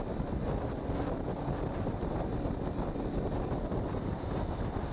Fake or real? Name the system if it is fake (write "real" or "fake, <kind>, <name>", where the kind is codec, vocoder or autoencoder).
real